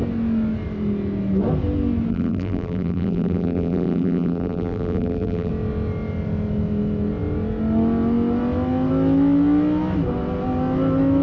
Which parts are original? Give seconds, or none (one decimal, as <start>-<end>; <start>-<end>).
0.0-2.1; 5.5-11.2